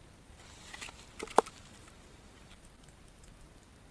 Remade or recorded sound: recorded